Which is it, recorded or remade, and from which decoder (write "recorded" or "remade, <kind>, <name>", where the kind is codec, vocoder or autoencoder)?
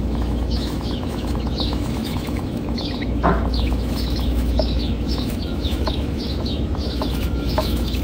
remade, autoencoder, DAC-VAE